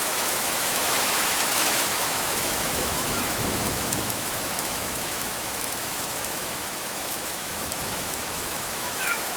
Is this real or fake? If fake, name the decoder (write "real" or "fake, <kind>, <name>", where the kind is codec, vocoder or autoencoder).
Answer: fake, autoencoder, DAC-VAE